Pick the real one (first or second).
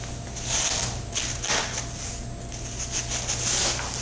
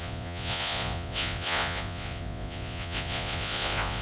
first